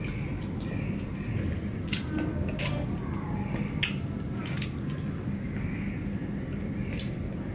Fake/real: real